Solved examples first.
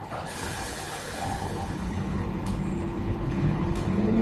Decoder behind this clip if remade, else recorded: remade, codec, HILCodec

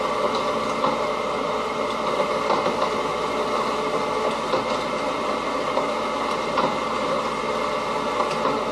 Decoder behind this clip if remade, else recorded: recorded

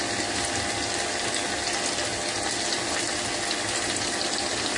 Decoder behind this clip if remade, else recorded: recorded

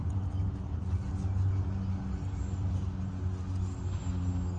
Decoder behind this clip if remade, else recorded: recorded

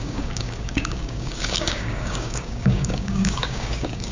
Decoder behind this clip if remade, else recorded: remade, codec, DAC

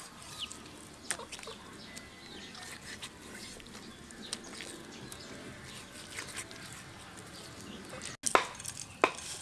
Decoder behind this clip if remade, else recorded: recorded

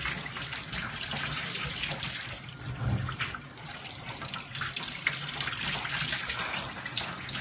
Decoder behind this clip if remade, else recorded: recorded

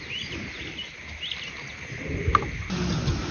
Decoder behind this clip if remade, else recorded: recorded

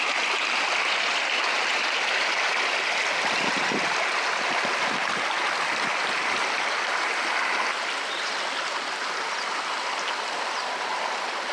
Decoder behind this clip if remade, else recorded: recorded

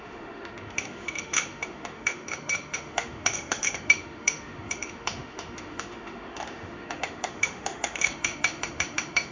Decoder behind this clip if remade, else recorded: remade, autoencoder, DAC-VAE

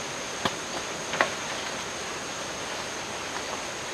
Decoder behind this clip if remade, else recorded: recorded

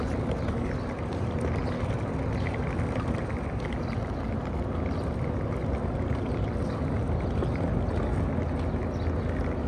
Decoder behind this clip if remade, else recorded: recorded